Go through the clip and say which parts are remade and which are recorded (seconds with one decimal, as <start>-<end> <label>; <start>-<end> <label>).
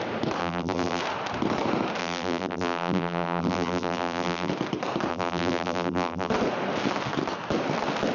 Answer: 0.0-0.4 recorded; 0.4-1.0 remade; 1.0-2.0 recorded; 2.0-4.5 remade; 4.5-5.1 recorded; 5.1-6.3 remade; 6.3-8.1 recorded